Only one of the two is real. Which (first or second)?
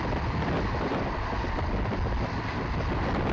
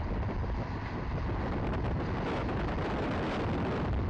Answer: second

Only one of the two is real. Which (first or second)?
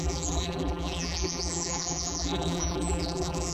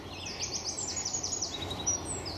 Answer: second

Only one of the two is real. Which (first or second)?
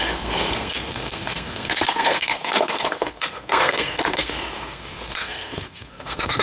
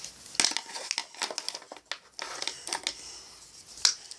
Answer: second